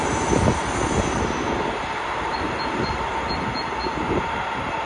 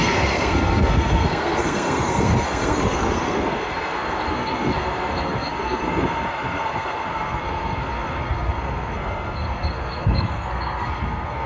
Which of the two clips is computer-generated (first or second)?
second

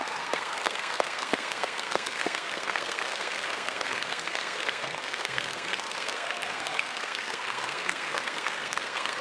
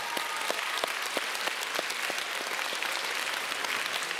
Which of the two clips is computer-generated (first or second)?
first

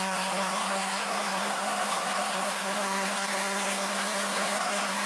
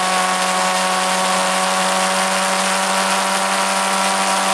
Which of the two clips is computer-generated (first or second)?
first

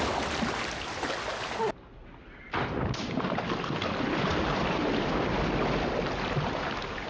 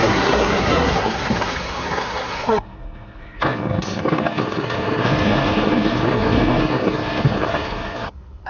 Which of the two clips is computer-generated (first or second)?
second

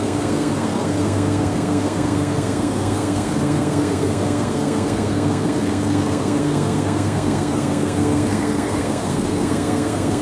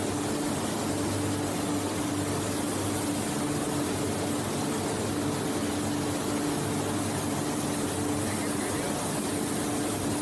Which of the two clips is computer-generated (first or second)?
first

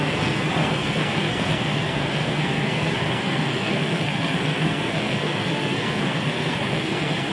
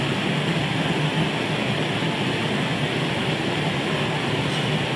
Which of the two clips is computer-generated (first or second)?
first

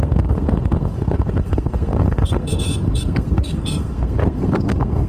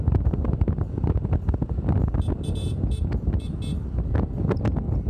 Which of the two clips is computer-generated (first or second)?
first